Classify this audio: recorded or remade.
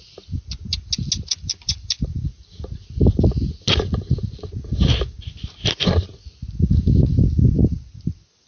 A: recorded